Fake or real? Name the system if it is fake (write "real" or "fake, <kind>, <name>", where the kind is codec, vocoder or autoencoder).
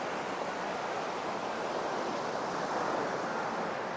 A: real